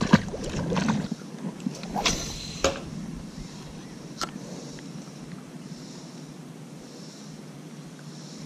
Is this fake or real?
fake